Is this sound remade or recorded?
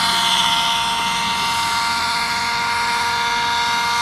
recorded